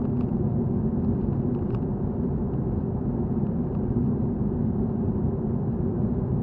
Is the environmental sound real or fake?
real